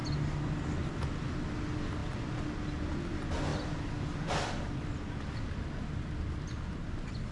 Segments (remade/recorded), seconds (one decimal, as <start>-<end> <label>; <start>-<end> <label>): 0.0-7.3 recorded